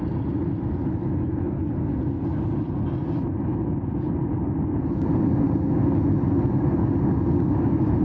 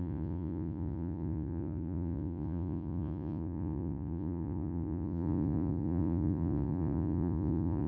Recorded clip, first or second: first